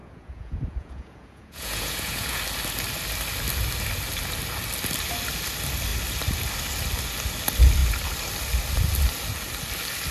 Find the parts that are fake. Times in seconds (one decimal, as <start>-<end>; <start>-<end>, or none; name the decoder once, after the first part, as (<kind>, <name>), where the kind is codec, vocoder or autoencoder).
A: 0.0-2.4 (vocoder, Vocos)